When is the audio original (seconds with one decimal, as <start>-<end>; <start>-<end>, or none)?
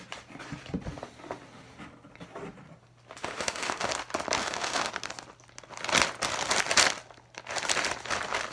0.0-3.2; 3.9-4.4; 4.9-8.5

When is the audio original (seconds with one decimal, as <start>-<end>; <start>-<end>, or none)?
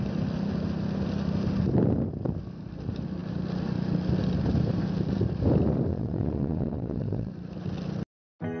0.0-5.9; 7.3-8.6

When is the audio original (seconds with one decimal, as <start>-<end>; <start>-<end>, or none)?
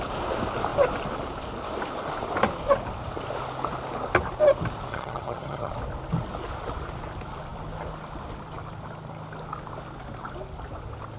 0.0-4.9; 5.7-11.2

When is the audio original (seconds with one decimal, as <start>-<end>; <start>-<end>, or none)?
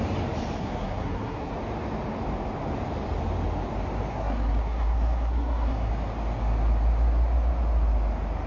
0.0-0.6; 1.5-4.1; 5.9-8.5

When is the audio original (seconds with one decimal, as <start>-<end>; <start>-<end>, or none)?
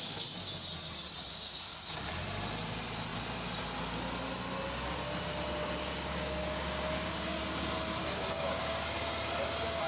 0.0-1.3; 2.0-5.3; 7.4-8.0; 8.6-9.9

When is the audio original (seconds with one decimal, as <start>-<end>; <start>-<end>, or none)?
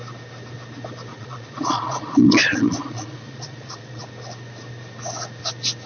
0.0-1.1; 4.1-5.9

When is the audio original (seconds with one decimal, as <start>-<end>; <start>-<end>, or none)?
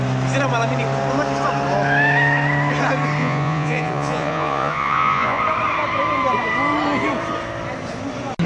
0.0-3.2; 5.4-8.5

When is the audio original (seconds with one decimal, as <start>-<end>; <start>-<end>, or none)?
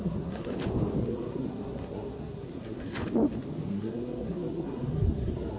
0.5-1.0; 3.0-3.7